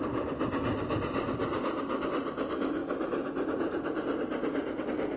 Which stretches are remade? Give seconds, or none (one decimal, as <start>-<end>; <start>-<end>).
none